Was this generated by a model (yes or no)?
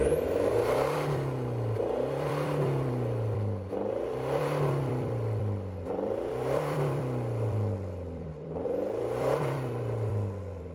yes